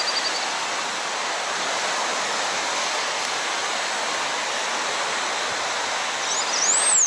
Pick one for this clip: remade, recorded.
recorded